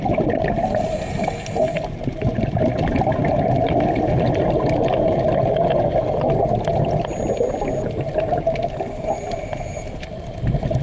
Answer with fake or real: real